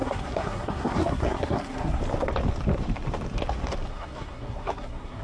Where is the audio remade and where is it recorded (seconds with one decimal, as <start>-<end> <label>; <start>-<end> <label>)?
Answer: 0.0-2.0 remade; 2.0-3.9 recorded; 3.9-5.2 remade